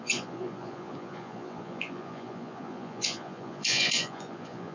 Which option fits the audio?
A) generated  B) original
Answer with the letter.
A